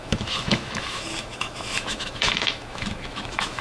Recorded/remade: remade